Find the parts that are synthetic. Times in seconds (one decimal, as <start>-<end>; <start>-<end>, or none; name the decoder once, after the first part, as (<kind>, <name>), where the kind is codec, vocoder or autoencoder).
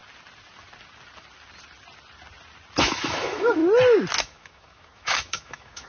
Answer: 2.8-3.6 (autoencoder, DAC-VAE); 4.2-5.9